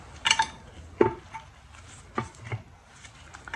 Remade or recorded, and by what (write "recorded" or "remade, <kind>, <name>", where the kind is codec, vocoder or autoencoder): recorded